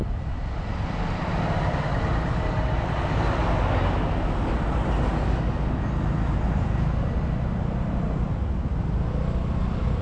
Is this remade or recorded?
recorded